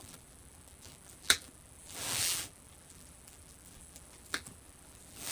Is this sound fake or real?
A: fake